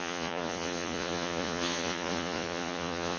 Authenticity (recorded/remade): remade